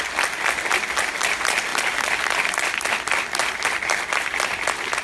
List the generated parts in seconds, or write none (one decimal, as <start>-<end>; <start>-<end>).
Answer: none